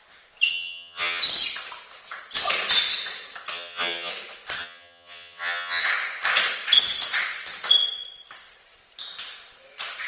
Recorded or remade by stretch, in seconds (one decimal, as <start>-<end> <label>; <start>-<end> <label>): 0.0-0.5 recorded; 0.5-1.2 remade; 1.2-3.5 recorded; 3.5-4.1 remade; 4.1-4.6 recorded; 4.6-5.8 remade; 5.8-10.1 recorded